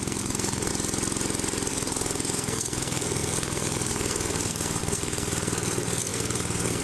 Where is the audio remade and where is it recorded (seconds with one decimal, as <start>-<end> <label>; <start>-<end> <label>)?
0.0-0.7 remade; 0.7-1.7 recorded; 1.7-6.8 remade

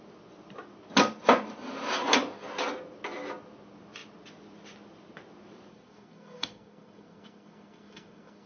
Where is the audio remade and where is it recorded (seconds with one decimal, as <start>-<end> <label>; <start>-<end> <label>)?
0.0-5.7 recorded; 5.7-8.5 remade

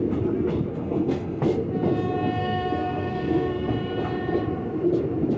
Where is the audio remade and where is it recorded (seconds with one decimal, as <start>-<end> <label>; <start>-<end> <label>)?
0.0-0.7 recorded; 0.7-1.4 remade; 1.4-2.4 recorded; 2.4-3.7 remade; 3.7-5.4 recorded